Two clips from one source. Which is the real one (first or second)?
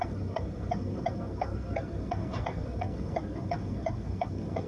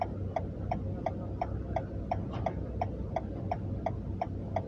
second